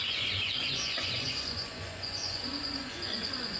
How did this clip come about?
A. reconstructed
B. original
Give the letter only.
A